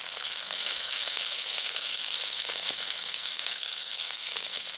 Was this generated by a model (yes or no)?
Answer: yes